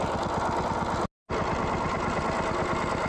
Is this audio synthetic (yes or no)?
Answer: no